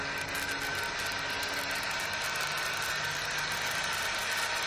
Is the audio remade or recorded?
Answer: recorded